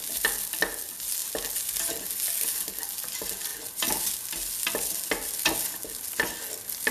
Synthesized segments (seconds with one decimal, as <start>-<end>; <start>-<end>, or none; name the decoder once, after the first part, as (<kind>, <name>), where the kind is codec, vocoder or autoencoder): none